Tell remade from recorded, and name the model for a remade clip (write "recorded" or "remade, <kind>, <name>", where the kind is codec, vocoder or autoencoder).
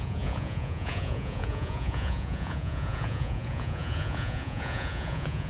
remade, vocoder, Vocos